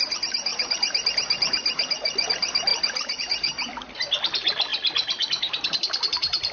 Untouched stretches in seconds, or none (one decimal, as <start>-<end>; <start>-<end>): 0.0-6.5